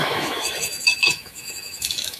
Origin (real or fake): fake